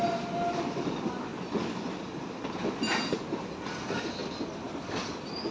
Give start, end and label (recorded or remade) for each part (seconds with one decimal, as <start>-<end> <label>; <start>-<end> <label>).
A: 0.0-5.5 recorded

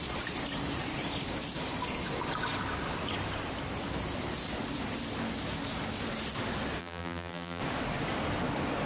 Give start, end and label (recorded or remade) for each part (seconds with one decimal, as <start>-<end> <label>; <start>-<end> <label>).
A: 0.0-6.8 recorded; 6.8-7.6 remade; 7.6-8.9 recorded

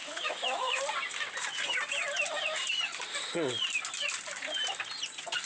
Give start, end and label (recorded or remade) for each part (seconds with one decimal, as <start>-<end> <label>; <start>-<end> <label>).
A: 0.0-0.8 remade; 0.8-5.5 recorded

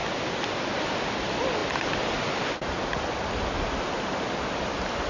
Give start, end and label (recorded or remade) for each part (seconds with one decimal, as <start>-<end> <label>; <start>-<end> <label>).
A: 0.0-5.1 recorded

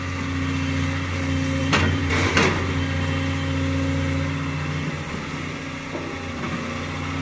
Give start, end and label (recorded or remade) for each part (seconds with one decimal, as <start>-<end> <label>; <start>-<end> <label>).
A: 0.0-1.6 recorded; 1.6-2.1 remade; 2.1-7.2 recorded

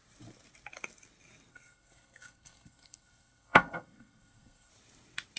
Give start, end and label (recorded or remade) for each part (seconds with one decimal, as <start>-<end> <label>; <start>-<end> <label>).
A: 0.0-1.5 recorded; 1.5-4.7 remade; 4.7-5.4 recorded

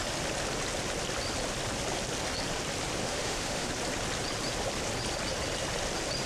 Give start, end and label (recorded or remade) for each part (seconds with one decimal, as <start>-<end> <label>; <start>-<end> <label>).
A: 0.0-3.0 recorded; 3.0-3.7 remade; 3.7-6.3 recorded